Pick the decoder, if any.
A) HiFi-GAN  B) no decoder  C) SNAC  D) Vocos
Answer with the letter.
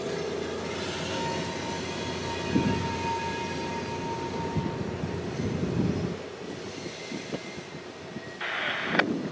B